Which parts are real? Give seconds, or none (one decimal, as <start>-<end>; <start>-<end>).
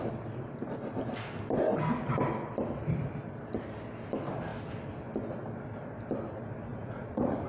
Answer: 0.0-6.7